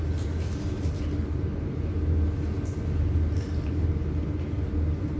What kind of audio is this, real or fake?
real